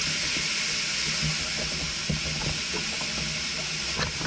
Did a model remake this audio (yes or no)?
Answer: no